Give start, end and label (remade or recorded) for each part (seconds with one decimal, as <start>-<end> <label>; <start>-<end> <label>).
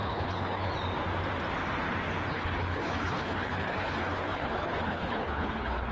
0.0-0.7 remade; 0.7-2.3 recorded; 2.3-5.9 remade